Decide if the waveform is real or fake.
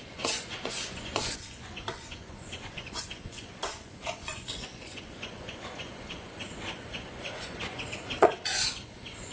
fake